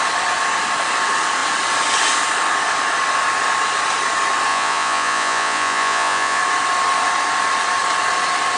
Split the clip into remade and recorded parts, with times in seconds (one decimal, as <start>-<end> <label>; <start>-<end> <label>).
0.0-4.5 recorded; 4.5-6.4 remade; 6.4-8.6 recorded